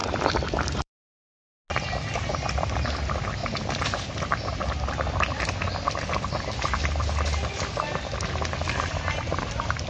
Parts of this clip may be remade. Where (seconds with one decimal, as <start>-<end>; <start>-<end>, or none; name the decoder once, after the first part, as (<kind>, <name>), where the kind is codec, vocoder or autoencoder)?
0.0-1.0 (vocoder, BigVGAN v2)

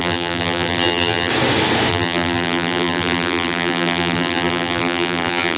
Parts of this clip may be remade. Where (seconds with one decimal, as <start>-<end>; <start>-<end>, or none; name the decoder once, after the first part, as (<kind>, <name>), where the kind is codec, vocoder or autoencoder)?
0.0-1.3 (vocoder, BigVGAN v2); 1.9-5.6